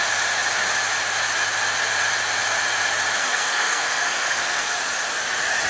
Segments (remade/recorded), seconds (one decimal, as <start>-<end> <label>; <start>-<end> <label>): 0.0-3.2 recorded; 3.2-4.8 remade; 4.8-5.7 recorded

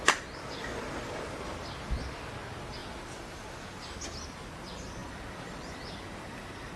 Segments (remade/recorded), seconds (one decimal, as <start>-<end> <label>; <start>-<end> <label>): 0.0-2.8 recorded; 2.8-3.5 remade; 3.5-5.0 recorded; 5.0-6.3 remade; 6.3-6.8 recorded

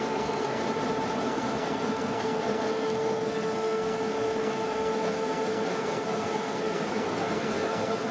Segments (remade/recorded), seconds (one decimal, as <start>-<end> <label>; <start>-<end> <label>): 0.0-0.6 remade; 0.6-1.2 recorded; 1.2-8.1 remade

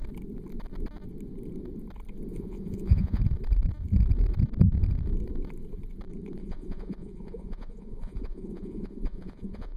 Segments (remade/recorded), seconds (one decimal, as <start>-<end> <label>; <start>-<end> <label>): 0.0-2.3 recorded; 2.3-3.2 remade; 3.2-6.4 recorded; 6.4-9.8 remade

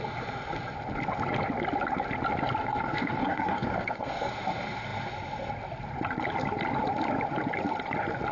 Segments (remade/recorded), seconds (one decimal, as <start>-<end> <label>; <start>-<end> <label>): 0.0-2.6 recorded; 2.6-4.3 remade; 4.3-8.3 recorded

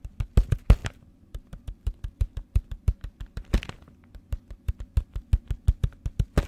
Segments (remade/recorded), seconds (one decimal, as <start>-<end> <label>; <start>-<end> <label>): 0.0-0.8 recorded; 0.8-4.7 remade; 4.7-6.5 recorded

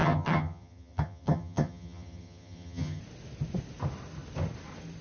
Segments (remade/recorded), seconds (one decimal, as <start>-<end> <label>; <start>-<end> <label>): 0.0-3.0 remade; 3.0-5.0 recorded

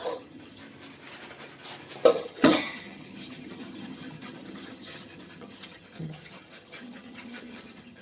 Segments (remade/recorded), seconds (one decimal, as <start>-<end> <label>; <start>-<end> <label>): 0.0-0.6 remade; 0.6-2.1 recorded; 2.1-8.0 remade